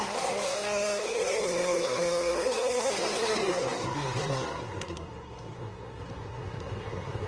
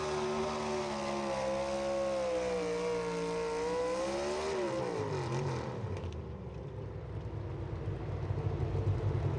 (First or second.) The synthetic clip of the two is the first